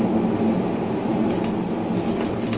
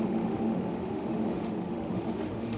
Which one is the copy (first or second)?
second